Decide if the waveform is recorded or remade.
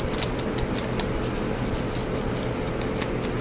recorded